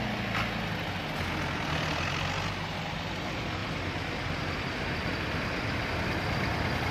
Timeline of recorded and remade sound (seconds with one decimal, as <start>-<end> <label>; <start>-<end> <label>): 0.0-6.9 recorded

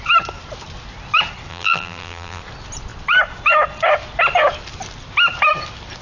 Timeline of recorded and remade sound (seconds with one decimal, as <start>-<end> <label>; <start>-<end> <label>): 0.0-1.5 recorded; 1.5-2.4 remade; 2.4-6.0 recorded

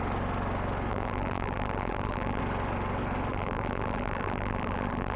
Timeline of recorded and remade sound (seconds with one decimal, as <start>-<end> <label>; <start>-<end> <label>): 0.0-0.9 recorded; 0.9-2.4 remade; 2.4-3.3 recorded; 3.3-5.2 remade